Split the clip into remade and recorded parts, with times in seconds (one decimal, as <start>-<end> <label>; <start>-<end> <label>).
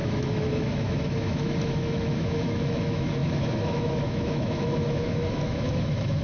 0.0-6.2 remade